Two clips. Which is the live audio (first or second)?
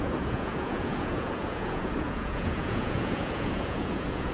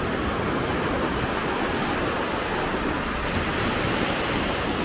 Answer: second